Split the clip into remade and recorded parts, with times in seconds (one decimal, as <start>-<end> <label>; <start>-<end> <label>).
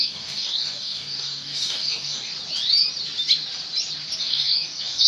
0.0-2.3 remade; 2.3-4.2 recorded; 4.2-5.1 remade